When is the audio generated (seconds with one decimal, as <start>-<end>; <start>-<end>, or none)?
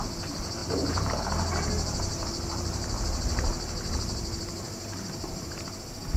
2.1-5.8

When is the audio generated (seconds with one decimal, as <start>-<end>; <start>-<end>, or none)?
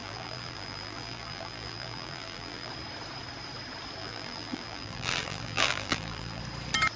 0.0-2.7; 4.0-6.4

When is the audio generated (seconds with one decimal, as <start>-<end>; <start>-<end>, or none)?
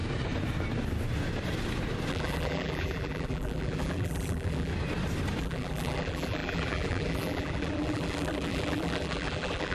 2.1-4.7; 5.4-9.7